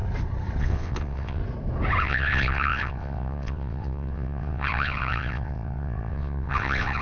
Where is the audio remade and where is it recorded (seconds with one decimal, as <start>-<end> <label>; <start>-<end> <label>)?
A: 0.0-0.6 recorded; 0.6-1.4 remade; 1.4-2.0 recorded; 2.0-7.0 remade